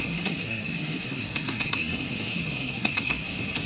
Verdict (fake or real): fake